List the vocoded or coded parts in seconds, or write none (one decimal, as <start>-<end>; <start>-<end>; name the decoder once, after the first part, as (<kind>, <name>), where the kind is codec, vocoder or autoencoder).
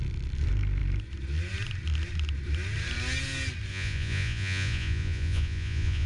3.7-6.1 (vocoder, Vocos)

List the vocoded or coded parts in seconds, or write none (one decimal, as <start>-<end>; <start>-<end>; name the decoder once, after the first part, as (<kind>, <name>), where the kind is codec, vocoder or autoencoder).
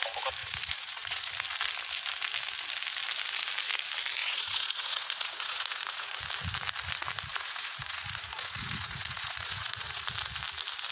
0.4-1.3 (vocoder, Vocos); 4.2-6.2; 7.3-10.0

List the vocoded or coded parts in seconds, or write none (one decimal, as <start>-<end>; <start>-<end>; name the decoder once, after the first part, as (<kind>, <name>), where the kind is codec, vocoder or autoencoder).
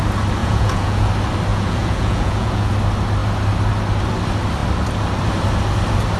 0.4-1.1 (vocoder, Vocos); 1.5-2.7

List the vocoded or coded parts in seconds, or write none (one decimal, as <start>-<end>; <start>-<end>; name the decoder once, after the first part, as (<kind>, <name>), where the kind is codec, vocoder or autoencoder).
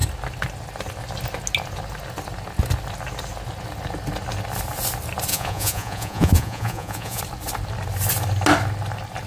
5.3-7.2 (vocoder, Vocos)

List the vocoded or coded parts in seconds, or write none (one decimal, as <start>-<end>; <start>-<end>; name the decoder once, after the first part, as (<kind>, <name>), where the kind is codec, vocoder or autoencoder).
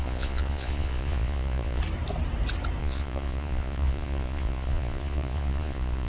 0.0-1.8 (vocoder, Vocos); 2.8-6.1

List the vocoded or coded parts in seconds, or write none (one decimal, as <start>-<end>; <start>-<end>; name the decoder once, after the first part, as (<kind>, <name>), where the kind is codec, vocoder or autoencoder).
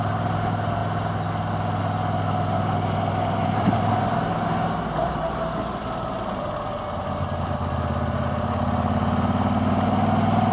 none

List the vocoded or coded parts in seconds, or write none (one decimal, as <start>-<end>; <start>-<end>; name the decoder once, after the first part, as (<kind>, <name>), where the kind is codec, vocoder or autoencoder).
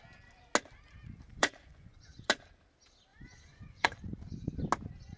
1.3-2.3 (vocoder, Vocos); 3.1-4.0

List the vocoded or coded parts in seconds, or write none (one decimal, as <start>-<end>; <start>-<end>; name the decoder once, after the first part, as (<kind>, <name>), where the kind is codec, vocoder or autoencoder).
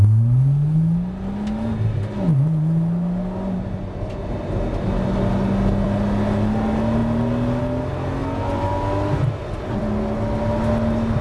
none